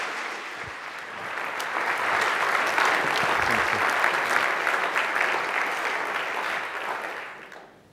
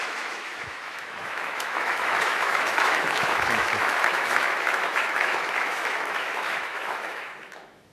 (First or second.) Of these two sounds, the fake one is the second